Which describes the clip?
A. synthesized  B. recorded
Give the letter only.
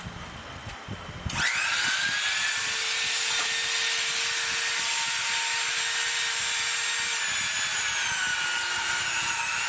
B